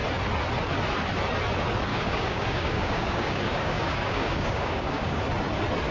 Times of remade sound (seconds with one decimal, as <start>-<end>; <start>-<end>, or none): 1.9-5.2